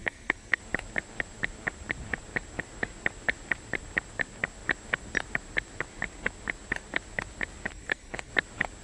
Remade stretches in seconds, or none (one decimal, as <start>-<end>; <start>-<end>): 0.0-0.6; 7.7-8.3